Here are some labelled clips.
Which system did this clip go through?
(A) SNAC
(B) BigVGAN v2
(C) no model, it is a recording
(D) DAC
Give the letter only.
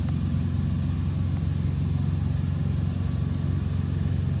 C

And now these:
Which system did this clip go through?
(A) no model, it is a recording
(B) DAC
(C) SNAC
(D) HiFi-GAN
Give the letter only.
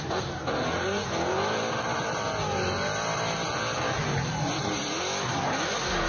A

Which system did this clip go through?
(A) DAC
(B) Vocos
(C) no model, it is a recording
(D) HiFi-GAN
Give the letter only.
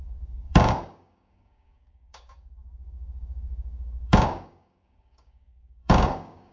A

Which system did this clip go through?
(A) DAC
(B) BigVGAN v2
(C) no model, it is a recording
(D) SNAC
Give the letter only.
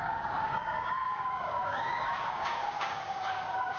A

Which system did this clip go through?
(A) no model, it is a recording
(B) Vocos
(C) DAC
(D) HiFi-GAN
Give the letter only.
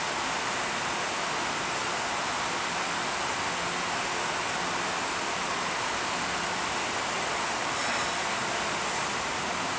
A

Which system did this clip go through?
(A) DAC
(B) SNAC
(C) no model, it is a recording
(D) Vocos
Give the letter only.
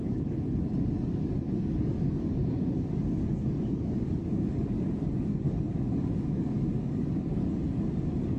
A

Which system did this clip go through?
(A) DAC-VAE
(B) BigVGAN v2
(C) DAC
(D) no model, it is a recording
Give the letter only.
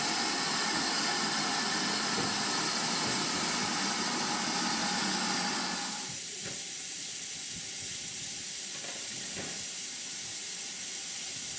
D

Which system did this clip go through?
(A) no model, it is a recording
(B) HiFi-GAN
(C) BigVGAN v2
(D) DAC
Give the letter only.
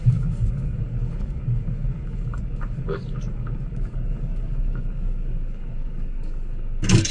D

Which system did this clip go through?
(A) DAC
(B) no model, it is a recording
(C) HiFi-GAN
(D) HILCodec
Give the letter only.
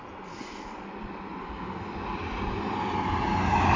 B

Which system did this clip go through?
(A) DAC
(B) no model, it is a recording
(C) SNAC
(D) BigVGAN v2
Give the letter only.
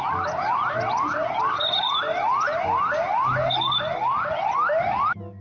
B